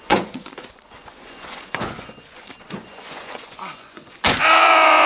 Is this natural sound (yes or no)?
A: no